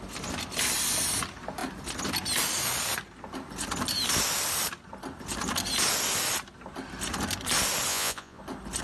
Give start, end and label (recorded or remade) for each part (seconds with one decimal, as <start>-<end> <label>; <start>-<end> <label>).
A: 0.0-7.9 recorded; 7.9-8.4 remade; 8.4-8.8 recorded